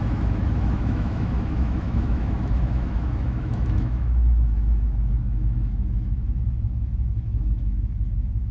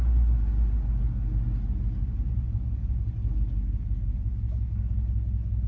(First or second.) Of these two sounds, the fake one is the first